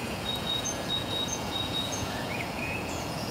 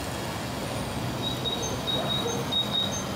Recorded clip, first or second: second